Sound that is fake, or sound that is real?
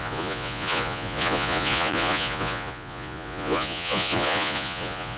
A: fake